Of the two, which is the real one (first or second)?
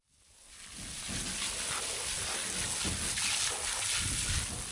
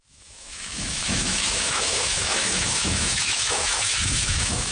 first